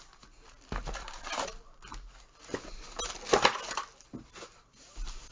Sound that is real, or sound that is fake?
real